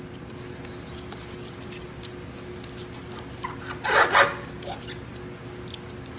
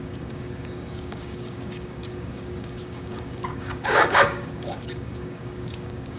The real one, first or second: first